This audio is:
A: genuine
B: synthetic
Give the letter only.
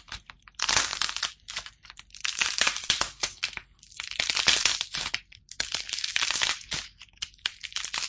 B